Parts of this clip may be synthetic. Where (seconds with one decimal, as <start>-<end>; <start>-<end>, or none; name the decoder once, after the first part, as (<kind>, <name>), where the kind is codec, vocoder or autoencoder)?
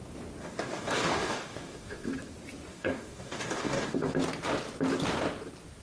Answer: 0.4-2.1 (codec, DAC); 2.7-4.1